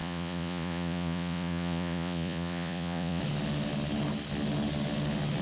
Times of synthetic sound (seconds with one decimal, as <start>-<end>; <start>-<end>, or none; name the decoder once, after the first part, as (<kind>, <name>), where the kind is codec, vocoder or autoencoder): 0.0-3.2 (vocoder, Vocos)

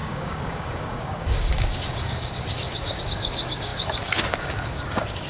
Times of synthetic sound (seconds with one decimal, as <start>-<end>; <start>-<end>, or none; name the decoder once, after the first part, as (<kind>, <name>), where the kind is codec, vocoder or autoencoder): 0.0-5.3 (codec, DAC)

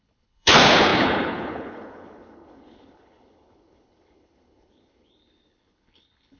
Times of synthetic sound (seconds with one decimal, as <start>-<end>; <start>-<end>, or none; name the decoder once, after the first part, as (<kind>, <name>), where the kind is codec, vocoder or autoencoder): 0.0-6.4 (codec, HILCodec)